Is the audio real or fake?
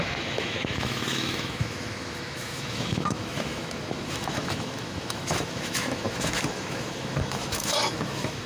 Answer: fake